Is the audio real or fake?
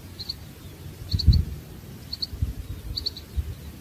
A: real